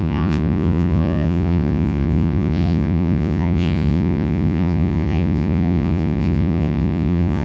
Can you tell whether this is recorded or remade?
remade